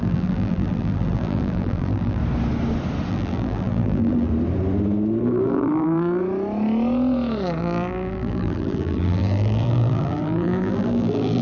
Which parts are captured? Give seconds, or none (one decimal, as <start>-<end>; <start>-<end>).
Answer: 2.2-3.1; 4.3-5.2; 6.2-7.6

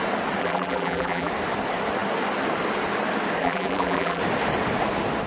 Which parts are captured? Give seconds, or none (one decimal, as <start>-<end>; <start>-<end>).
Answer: 0.0-0.4; 1.3-3.4; 4.2-5.3

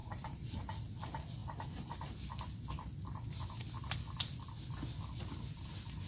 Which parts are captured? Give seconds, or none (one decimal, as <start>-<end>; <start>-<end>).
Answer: 0.6-6.1

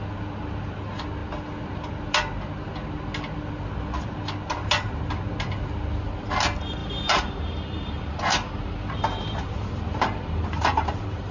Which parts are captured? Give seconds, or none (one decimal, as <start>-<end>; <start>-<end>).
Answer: 0.0-6.8

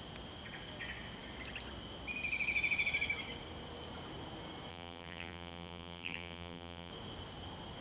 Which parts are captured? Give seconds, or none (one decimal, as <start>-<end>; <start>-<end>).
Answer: 0.0-4.7; 6.9-7.8

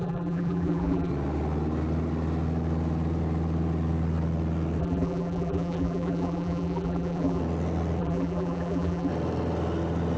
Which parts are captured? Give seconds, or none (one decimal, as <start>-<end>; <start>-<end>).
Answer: 1.1-4.8; 7.4-8.0; 9.1-10.2

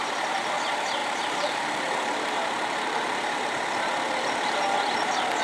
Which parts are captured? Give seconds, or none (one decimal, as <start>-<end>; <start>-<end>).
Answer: none

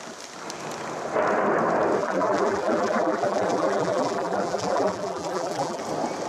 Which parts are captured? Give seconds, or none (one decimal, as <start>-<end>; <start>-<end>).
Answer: 0.0-2.0; 5.8-6.3